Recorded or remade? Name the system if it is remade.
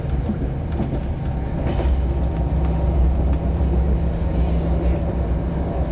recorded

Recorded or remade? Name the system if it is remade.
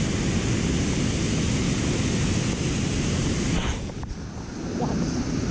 recorded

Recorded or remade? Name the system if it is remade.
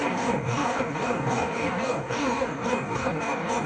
remade, codec, DAC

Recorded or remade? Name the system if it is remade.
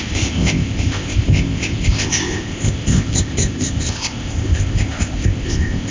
remade, codec, ZipCodec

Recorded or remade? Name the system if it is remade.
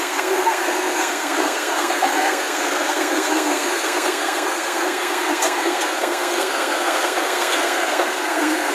remade, codec, SNAC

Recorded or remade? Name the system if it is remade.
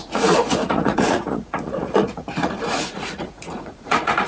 remade, vocoder, Vocos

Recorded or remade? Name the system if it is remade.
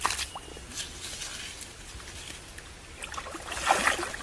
recorded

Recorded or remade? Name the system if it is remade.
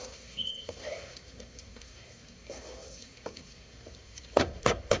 remade, codec, SNAC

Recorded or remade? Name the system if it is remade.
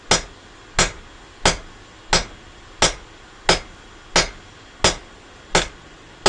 recorded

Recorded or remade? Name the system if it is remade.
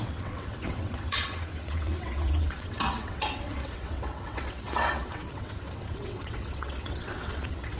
remade, vocoder, WaveNeXt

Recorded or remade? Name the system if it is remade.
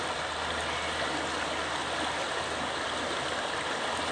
recorded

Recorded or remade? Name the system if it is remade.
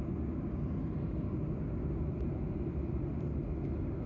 recorded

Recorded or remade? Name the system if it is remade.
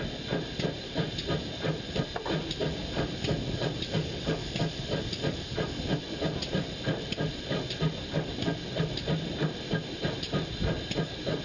recorded